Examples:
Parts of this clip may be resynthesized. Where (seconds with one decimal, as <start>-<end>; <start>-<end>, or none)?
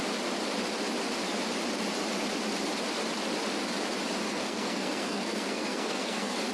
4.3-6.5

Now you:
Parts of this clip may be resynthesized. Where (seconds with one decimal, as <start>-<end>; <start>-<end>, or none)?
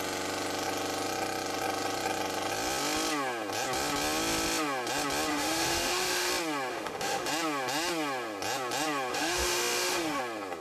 5.3-6.3; 6.7-7.3; 9.1-10.2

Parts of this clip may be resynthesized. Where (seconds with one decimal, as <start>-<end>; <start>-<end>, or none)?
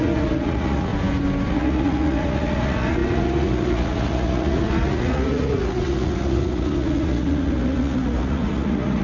0.0-0.9; 1.5-9.0